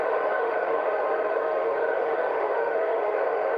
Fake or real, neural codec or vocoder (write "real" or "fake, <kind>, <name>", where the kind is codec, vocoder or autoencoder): fake, autoencoder, DAC-VAE